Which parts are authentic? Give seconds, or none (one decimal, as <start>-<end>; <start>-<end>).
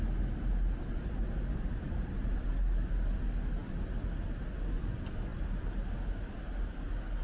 0.0-7.2